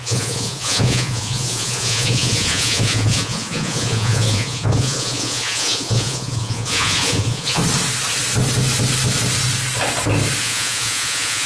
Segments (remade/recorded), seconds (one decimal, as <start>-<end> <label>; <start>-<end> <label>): 0.0-7.6 remade; 7.6-10.4 recorded; 10.4-11.5 remade